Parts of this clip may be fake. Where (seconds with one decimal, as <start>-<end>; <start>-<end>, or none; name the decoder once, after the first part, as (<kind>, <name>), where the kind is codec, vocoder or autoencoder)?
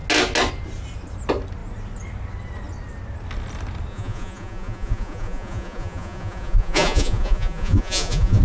3.9-8.4 (vocoder, Vocos)